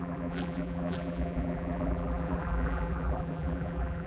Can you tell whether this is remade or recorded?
remade